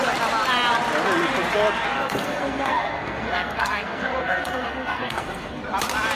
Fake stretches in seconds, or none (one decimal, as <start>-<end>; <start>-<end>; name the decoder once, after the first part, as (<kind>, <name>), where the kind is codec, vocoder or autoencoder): 1.9-5.6 (codec, SNAC)